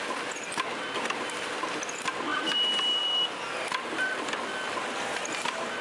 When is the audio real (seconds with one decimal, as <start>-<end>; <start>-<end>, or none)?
0.0-5.8